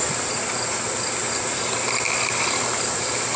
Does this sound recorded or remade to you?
recorded